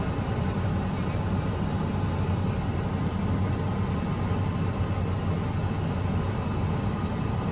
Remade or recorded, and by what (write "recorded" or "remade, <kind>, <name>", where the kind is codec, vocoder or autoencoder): recorded